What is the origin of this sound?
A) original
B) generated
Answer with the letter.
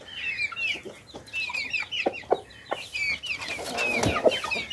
A